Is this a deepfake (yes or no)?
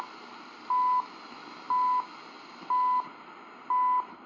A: no